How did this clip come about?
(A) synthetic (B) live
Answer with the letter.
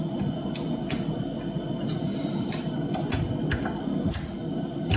B